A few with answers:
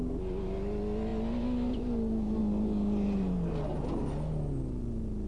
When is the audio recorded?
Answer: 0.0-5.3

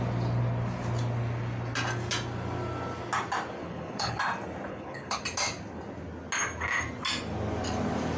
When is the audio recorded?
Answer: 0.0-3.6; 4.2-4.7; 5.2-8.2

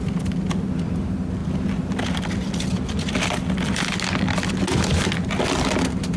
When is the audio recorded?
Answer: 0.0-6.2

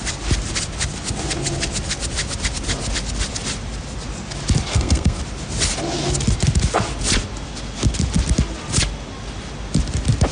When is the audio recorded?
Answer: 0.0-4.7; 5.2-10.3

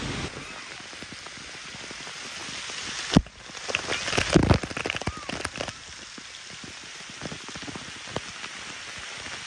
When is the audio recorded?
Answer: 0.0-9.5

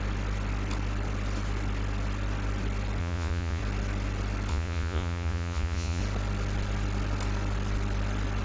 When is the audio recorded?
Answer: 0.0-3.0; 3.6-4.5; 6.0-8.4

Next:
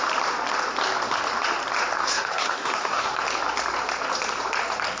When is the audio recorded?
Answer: 0.0-2.0; 3.1-5.0